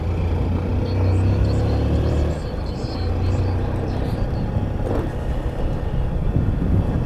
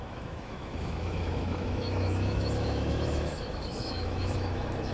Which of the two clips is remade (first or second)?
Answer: second